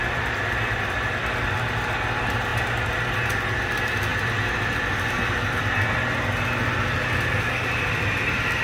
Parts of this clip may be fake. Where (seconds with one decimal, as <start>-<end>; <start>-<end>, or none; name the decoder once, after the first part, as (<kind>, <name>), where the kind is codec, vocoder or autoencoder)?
none